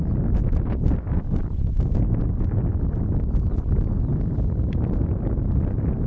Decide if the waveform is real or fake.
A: real